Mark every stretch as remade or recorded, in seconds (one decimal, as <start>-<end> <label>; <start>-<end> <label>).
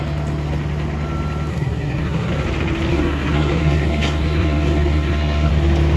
0.0-1.5 recorded; 1.5-2.3 remade; 2.3-2.9 recorded; 2.9-5.5 remade; 5.5-6.0 recorded